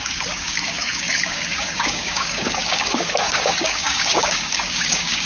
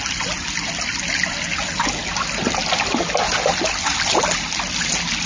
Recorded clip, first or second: second